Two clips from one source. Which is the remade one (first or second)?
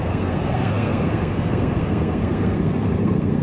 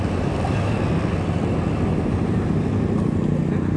first